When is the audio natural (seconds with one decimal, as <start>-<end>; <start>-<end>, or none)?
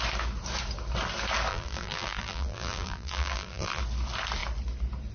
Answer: 0.0-1.5; 3.8-5.1